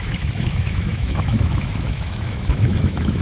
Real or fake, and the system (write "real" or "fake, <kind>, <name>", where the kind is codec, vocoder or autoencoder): fake, autoencoder, DAC-VAE